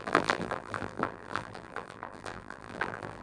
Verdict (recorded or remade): remade